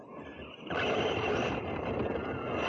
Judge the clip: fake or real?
real